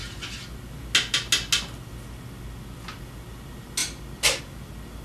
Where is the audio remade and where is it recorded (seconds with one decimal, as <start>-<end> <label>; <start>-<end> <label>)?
0.0-5.0 recorded

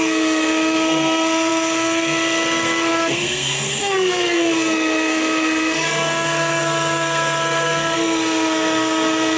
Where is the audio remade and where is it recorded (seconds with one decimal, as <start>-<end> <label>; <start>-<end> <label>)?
0.0-9.4 remade